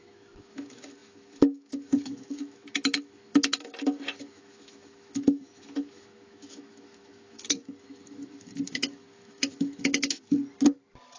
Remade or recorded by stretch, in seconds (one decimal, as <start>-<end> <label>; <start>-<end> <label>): 0.0-10.4 remade; 10.4-11.2 recorded